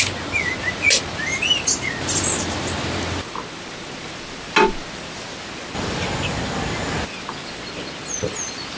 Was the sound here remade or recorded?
recorded